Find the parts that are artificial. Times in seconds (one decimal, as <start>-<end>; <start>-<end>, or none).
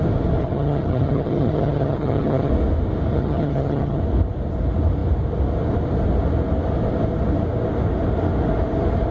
0.4-2.5; 3.1-4.0